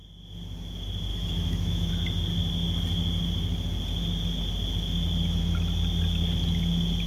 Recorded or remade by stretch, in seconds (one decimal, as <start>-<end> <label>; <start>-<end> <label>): 0.0-1.1 recorded; 1.1-1.9 remade; 1.9-7.1 recorded